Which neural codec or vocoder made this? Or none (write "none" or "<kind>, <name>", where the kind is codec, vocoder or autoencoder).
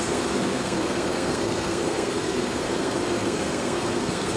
codec, SNAC